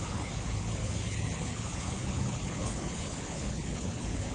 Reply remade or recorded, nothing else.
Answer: remade